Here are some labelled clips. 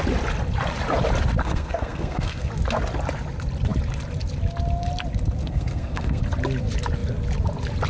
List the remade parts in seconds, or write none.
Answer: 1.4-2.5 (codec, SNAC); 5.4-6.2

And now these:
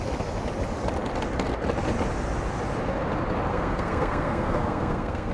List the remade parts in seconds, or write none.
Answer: 3.5-5.3 (codec, SNAC)

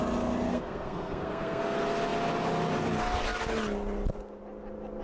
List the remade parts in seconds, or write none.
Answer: 0.5-1.6 (codec, SNAC)

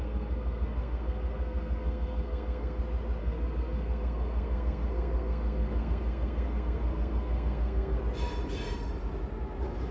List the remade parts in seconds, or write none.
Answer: 0.0-2.8 (codec, SNAC); 3.2-8.0

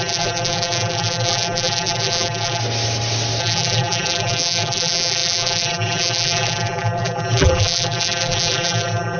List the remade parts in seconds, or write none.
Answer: 0.0-2.6 (vocoder, BigVGAN v2); 3.4-9.2

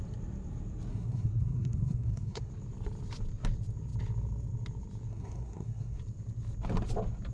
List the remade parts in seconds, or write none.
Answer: 0.9-2.5 (codec, SNAC); 5.1-6.0